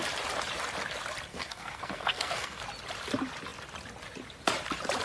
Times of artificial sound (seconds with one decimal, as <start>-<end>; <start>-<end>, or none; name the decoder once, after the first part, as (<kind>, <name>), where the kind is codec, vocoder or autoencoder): 1.3-2.6 (codec, SNAC)